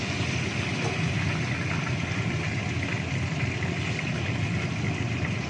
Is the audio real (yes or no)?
yes